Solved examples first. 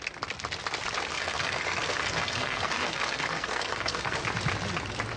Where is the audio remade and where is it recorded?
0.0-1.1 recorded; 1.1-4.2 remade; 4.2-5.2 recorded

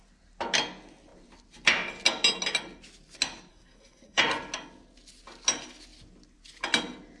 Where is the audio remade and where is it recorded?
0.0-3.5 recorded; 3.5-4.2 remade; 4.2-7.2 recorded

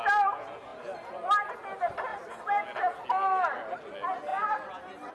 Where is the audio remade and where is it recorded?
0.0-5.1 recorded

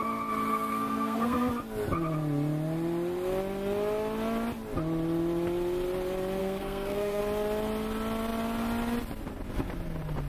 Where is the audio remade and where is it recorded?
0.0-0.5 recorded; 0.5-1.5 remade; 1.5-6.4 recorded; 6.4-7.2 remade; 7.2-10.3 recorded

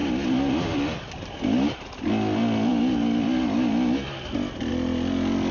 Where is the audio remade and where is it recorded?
0.0-5.5 recorded

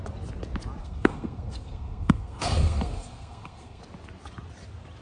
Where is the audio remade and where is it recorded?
0.0-0.8 recorded; 0.8-3.8 remade; 3.8-5.0 recorded

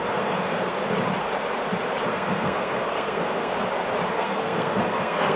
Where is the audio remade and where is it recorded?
0.0-0.8 remade; 0.8-2.1 recorded; 2.1-3.5 remade; 3.5-4.1 recorded; 4.1-5.4 remade

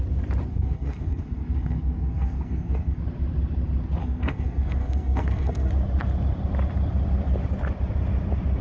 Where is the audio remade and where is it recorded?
0.0-0.5 recorded; 0.5-3.0 remade; 3.0-4.0 recorded; 4.0-5.7 remade; 5.7-8.6 recorded